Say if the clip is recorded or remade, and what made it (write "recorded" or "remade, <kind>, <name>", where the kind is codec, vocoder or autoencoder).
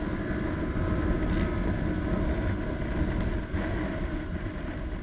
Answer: recorded